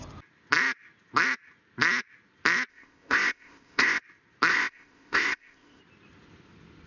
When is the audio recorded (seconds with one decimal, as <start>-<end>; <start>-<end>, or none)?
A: 0.0-2.7; 4.0-4.5; 5.8-6.9